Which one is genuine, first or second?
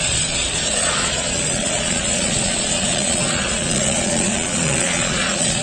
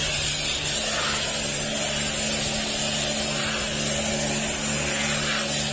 second